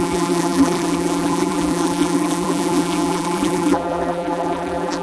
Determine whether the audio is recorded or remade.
remade